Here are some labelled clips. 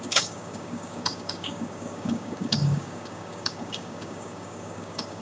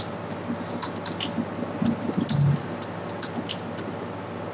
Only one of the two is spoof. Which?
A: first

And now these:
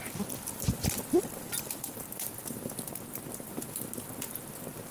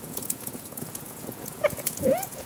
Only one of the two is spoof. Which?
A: second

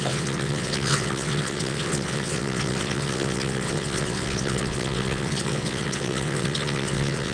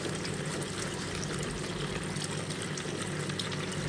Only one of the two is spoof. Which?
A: first